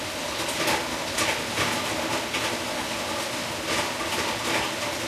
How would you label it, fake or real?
real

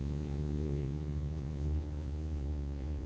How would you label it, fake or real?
fake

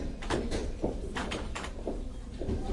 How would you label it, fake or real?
fake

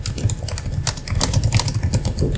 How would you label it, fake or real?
real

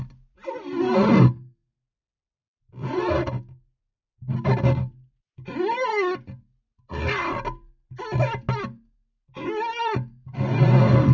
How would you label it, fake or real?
real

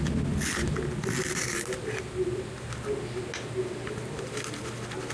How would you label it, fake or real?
real